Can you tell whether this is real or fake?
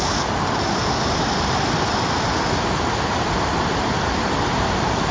real